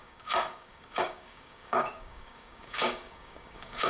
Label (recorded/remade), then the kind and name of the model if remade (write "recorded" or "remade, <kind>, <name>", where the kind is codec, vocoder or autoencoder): remade, codec, DAC